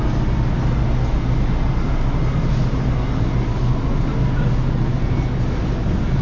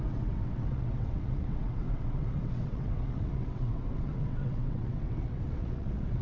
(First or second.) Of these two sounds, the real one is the first